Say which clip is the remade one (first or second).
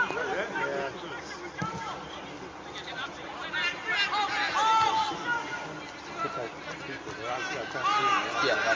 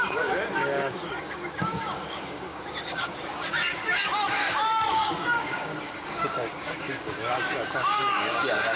second